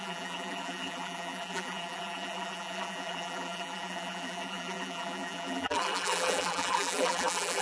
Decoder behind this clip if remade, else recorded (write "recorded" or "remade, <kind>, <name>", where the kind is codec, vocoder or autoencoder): remade, vocoder, BigVGAN v2